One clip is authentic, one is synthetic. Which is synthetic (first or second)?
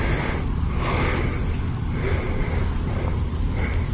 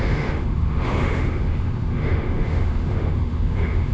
second